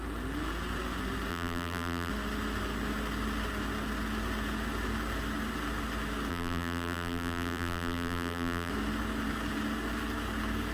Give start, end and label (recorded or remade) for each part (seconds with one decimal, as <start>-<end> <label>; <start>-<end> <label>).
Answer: 0.0-1.3 recorded; 1.3-2.1 remade; 2.1-6.3 recorded; 6.3-8.7 remade; 8.7-10.7 recorded